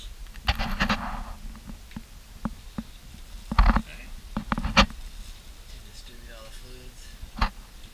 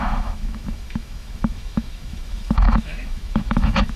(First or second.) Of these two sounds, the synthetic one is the second